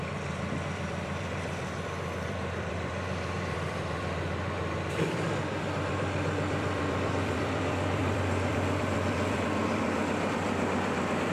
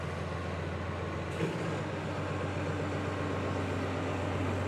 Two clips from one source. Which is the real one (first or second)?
second